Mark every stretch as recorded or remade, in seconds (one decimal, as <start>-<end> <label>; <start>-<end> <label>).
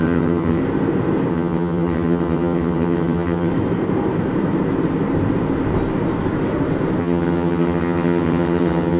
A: 0.0-0.6 remade; 0.6-1.3 recorded; 1.3-3.5 remade; 3.5-7.0 recorded; 7.0-9.0 remade